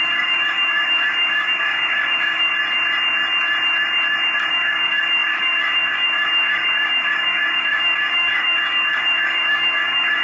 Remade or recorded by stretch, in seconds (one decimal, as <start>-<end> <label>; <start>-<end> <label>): 0.0-2.5 remade; 2.5-4.5 recorded; 4.5-10.2 remade